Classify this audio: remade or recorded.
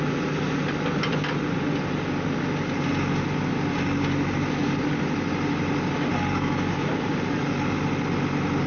recorded